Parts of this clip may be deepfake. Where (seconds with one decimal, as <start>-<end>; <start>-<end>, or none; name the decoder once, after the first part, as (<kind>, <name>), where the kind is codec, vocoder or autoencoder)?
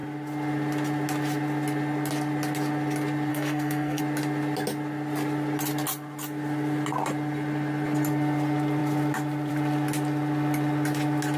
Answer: 3.3-4.0 (codec, SNAC)